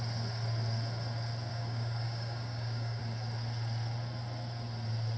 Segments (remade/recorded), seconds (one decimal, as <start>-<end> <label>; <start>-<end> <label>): 0.0-1.5 recorded; 1.5-3.0 remade; 3.0-5.2 recorded